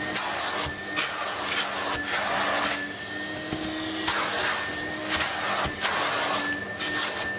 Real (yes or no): yes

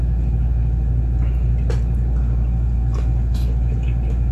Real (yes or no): yes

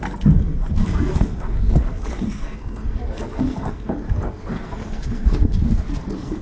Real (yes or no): no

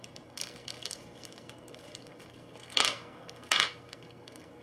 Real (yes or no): no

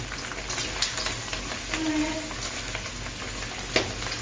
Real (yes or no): yes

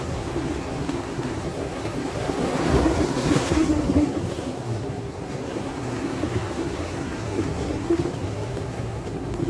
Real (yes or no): no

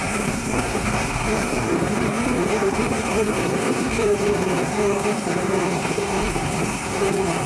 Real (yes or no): no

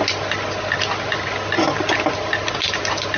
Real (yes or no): yes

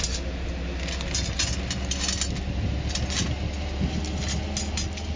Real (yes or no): yes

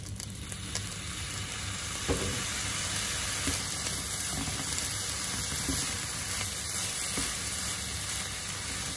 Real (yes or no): yes